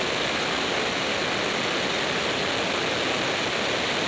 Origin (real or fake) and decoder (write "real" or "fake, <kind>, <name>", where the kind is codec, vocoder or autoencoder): real